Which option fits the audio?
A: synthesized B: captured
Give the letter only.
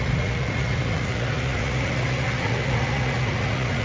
A